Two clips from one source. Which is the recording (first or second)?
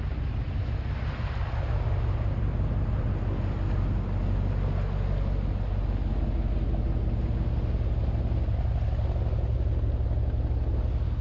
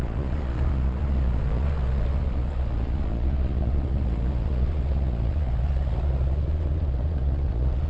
first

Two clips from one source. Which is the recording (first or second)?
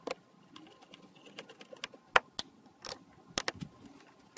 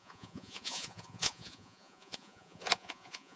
first